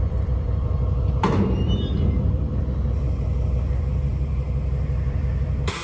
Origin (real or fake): fake